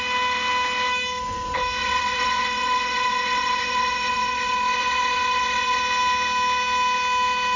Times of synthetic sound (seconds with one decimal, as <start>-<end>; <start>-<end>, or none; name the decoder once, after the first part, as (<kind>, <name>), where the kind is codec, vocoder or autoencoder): 1.8-5.8 (vocoder, WaveNeXt)